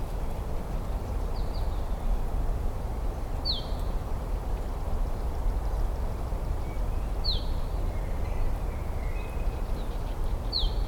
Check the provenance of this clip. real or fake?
fake